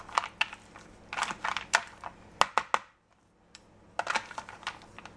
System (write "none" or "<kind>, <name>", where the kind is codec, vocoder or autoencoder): none